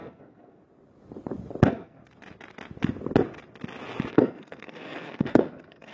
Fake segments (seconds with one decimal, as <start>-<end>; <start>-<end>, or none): 0.0-0.6; 1.6-2.0; 4.1-5.9